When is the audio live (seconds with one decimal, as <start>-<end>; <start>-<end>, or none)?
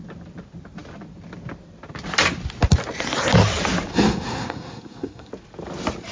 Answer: 0.0-3.9; 5.3-6.1